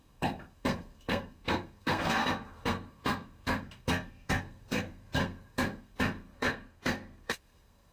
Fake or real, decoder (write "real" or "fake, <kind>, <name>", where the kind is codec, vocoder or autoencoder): fake, codec, SNAC